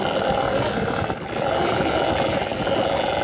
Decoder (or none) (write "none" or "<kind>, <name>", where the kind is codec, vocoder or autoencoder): none